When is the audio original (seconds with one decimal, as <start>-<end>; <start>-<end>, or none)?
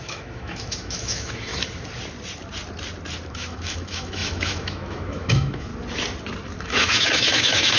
1.5-3.3; 5.7-6.6